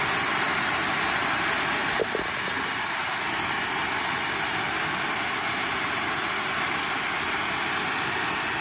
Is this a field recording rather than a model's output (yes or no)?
yes